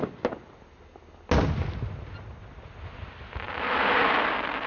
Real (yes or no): yes